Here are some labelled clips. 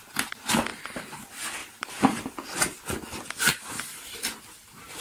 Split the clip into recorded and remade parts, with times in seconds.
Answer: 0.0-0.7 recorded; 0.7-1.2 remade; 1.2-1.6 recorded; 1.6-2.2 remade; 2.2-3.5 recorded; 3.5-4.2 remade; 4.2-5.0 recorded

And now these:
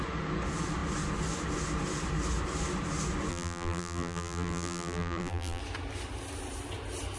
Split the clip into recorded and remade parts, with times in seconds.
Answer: 0.0-3.3 recorded; 3.3-5.6 remade; 5.6-7.2 recorded

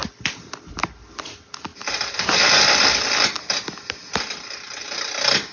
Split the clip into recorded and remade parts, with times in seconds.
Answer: 0.0-5.5 recorded

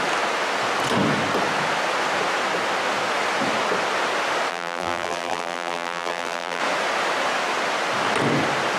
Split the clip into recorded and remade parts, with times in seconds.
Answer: 0.0-4.5 recorded; 4.5-6.6 remade; 6.6-8.8 recorded

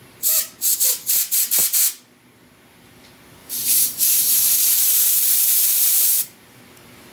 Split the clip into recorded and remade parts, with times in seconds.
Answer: 0.0-3.4 recorded; 3.4-6.6 remade; 6.6-7.1 recorded

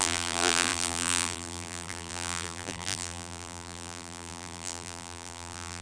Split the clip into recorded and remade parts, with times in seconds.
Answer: 0.0-5.8 remade

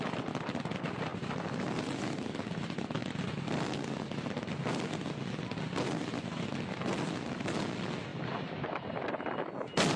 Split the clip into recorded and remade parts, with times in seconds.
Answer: 0.0-1.1 recorded; 1.1-2.2 remade; 2.2-8.1 recorded; 8.1-9.0 remade; 9.0-10.0 recorded

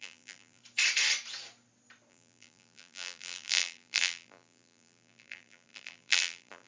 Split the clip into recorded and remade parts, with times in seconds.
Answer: 0.0-0.6 remade; 0.6-2.1 recorded; 2.1-6.7 remade